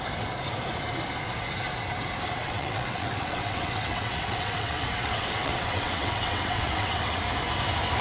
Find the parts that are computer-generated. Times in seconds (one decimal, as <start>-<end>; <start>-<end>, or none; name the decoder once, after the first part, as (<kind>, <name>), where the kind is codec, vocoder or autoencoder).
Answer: 2.4-7.2 (vocoder, WaveNeXt)